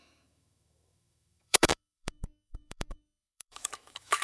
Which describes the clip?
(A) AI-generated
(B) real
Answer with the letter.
A